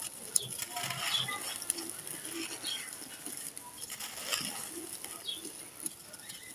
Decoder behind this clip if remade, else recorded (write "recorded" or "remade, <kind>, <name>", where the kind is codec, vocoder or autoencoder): recorded